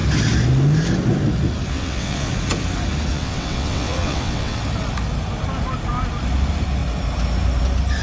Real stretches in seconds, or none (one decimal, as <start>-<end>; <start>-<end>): 0.0-1.7; 2.3-3.1; 4.6-8.0